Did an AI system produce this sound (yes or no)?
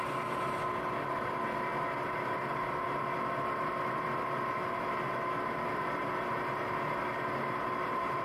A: no